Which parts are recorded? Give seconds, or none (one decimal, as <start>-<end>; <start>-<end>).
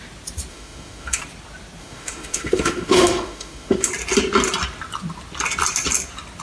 0.0-0.5; 1.2-1.8; 3.9-6.4